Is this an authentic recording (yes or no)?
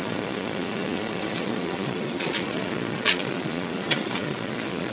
no